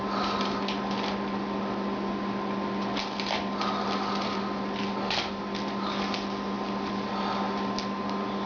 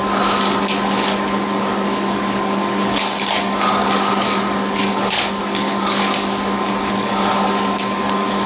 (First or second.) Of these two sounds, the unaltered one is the first